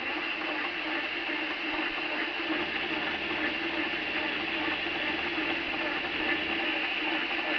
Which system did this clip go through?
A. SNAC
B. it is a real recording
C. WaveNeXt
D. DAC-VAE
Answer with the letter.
B